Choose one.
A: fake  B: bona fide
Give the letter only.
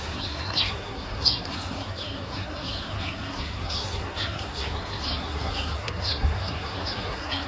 A